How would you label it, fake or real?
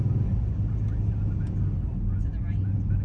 real